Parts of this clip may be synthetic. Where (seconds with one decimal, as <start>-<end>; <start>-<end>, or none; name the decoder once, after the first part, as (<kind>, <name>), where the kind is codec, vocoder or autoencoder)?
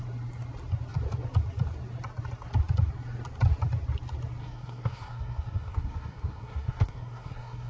4.4-7.7 (codec, SNAC)